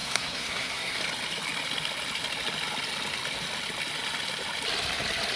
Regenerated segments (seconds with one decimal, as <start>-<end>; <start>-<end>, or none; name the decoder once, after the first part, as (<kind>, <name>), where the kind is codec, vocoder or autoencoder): 0.0-1.0 (codec, SNAC)